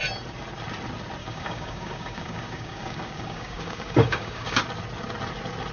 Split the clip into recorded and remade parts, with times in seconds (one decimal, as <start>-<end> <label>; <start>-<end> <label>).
0.0-1.2 recorded; 1.2-4.6 remade; 4.6-5.7 recorded